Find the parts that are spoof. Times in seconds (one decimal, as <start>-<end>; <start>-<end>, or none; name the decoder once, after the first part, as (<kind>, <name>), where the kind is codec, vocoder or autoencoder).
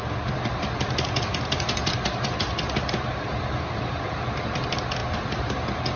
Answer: none